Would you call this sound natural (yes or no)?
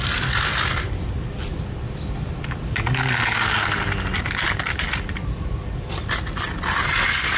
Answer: yes